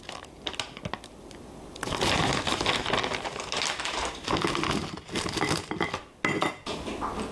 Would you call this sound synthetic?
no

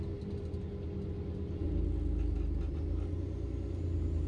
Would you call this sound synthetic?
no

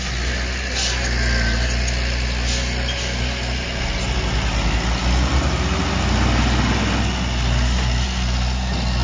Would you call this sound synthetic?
no